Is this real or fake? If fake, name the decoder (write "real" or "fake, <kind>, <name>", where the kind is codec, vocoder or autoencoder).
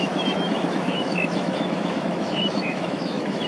fake, autoencoder, DAC-VAE